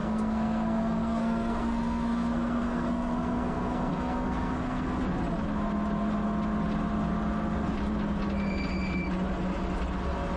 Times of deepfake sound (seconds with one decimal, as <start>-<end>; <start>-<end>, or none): 0.0-4.9